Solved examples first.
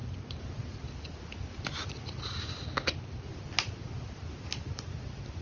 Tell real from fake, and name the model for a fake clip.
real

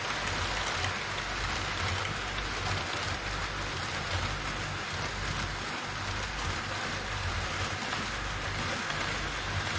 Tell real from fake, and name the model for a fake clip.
real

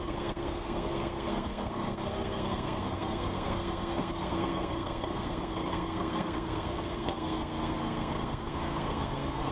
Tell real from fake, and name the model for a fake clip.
fake, codec, SNAC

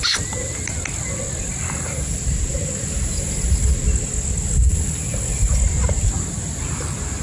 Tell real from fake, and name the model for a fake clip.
real